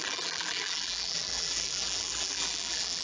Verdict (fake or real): fake